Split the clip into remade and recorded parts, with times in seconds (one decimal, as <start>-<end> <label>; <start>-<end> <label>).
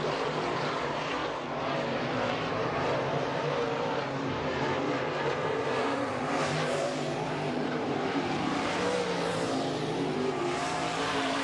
0.0-1.2 remade; 1.2-2.5 recorded; 2.5-11.4 remade